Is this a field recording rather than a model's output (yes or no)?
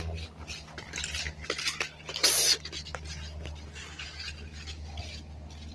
yes